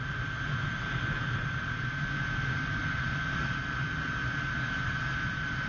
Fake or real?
real